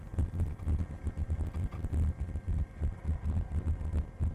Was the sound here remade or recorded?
recorded